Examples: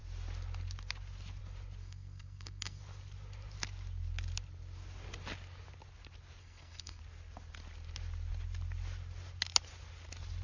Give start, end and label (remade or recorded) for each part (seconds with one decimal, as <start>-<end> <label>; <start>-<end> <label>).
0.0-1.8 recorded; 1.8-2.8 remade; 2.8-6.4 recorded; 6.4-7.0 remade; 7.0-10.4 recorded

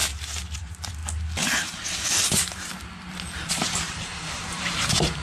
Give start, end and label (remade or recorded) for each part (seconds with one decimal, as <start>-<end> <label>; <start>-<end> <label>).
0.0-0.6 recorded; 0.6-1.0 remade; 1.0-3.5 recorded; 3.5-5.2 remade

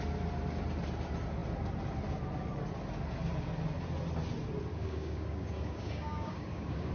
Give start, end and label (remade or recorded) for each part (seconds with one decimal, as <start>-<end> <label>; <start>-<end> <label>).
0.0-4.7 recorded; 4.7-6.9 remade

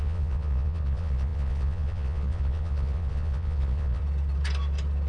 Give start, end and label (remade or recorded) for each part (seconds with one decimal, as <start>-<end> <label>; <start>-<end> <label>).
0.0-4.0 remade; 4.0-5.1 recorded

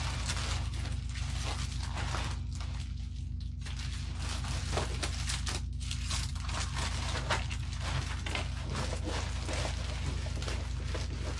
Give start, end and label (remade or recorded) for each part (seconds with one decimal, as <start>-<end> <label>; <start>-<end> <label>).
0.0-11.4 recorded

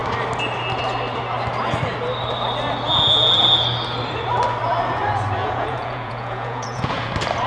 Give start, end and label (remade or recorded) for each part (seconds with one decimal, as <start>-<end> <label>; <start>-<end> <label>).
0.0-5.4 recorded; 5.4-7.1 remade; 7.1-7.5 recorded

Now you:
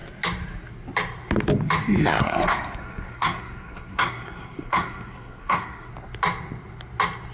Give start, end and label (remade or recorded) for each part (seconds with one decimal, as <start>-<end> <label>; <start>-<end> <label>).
0.0-2.2 recorded; 2.2-5.9 remade; 5.9-7.3 recorded

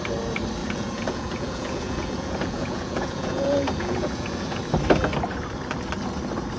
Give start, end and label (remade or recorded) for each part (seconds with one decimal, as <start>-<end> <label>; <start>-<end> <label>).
0.0-0.6 recorded; 0.6-4.6 remade; 4.6-6.6 recorded